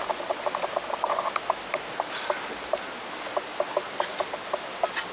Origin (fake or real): real